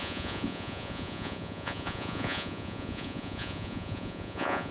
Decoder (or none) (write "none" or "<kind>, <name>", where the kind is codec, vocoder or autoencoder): vocoder, Vocos